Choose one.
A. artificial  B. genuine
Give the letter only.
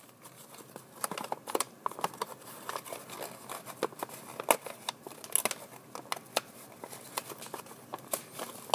B